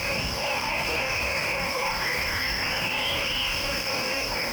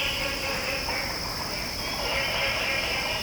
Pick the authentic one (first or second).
second